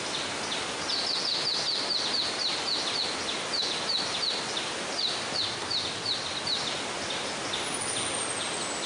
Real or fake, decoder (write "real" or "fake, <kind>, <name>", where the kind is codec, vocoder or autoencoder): real